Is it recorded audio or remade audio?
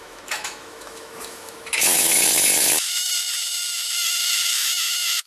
remade